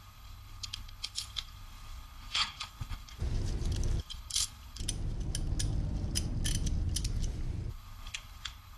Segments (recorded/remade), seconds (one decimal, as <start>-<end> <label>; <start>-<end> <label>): 0.0-3.2 remade; 3.2-4.0 recorded; 4.0-4.8 remade; 4.8-7.7 recorded; 7.7-8.8 remade